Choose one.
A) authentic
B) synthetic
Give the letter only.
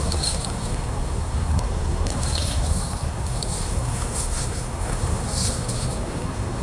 B